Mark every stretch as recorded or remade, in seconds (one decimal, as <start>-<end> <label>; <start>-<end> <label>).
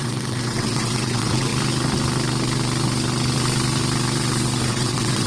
0.0-1.5 remade; 1.5-4.7 recorded; 4.7-5.3 remade